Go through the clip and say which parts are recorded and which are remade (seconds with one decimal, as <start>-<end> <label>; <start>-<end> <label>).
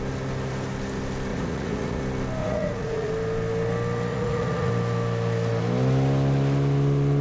0.0-1.3 recorded; 1.3-2.0 remade; 2.0-2.4 recorded; 2.4-3.1 remade; 3.1-4.1 recorded; 4.1-4.7 remade; 4.7-7.2 recorded